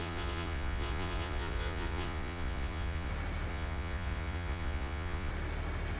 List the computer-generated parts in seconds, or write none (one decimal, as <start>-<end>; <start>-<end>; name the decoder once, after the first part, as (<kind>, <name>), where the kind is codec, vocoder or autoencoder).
0.0-3.1 (vocoder, Vocos); 3.5-5.3

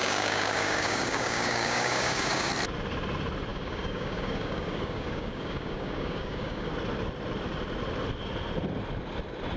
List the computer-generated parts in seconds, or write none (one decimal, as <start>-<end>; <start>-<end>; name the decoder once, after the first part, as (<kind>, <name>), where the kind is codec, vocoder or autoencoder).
0.0-2.5 (codec, DAC); 3.5-6.7